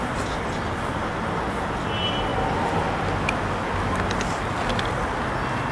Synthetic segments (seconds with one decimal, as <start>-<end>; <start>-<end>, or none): none